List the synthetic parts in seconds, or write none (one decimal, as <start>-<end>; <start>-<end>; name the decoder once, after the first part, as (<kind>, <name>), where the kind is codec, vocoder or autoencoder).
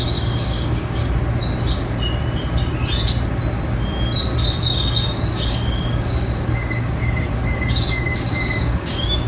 0.0-1.0 (codec, DAC); 4.6-9.3